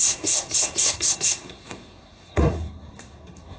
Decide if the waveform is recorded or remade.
remade